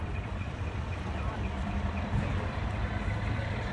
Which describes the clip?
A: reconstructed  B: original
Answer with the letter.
A